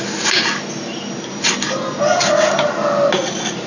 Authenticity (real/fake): real